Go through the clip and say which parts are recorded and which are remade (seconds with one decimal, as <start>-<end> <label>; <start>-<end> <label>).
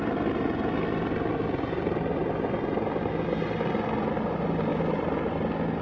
0.0-5.8 recorded